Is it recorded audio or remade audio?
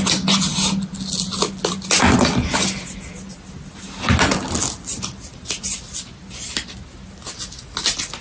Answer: recorded